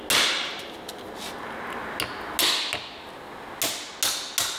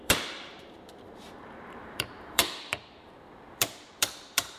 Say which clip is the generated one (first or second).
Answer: second